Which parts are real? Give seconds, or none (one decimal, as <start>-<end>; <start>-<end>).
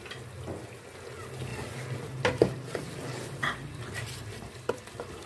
0.0-1.5; 4.7-5.3